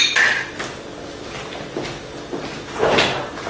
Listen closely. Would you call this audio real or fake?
real